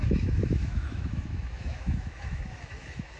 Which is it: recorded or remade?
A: remade